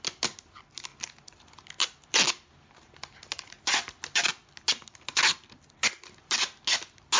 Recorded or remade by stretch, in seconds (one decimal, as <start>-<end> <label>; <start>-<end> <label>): 0.0-7.2 recorded